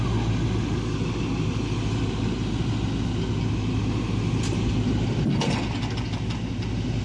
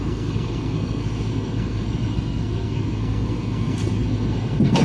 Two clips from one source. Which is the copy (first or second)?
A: second